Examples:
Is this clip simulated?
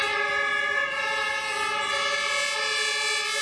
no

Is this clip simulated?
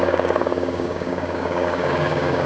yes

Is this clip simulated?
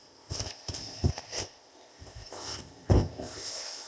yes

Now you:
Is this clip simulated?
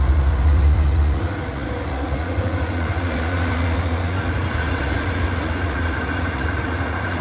yes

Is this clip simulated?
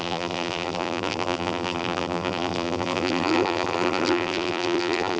yes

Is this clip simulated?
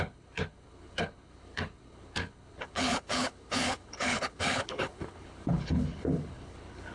yes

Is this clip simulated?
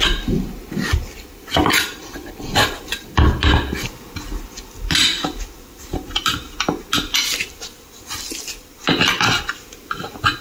no